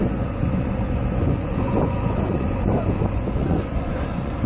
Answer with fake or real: fake